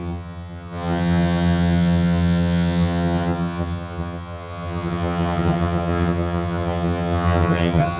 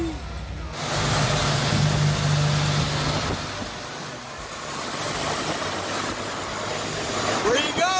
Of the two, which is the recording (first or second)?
second